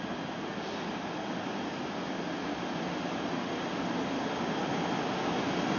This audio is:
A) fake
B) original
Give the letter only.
B